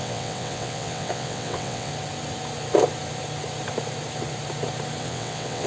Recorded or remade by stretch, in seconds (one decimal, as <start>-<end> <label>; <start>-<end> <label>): 0.0-1.9 remade; 1.9-5.0 recorded; 5.0-5.7 remade